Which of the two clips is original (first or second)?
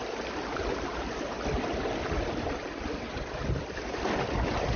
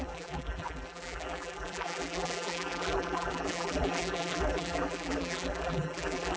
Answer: first